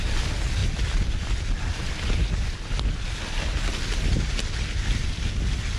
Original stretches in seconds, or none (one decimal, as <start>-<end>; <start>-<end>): 0.0-5.8

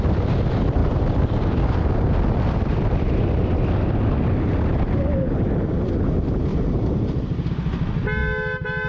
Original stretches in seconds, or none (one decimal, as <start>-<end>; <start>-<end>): 0.0-6.5; 7.5-8.9

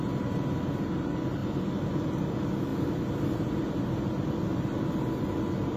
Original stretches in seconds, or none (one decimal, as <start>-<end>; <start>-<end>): 0.0-5.8